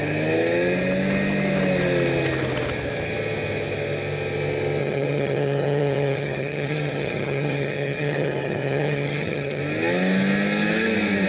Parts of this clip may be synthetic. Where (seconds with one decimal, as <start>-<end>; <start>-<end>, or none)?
4.8-9.6